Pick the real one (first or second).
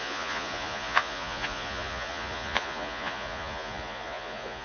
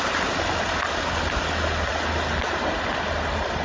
second